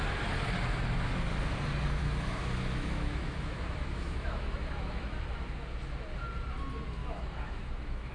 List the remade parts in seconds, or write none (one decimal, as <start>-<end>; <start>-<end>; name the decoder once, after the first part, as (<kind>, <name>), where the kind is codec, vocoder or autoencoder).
2.0-5.0 (autoencoder, DAC-VAE); 7.0-8.1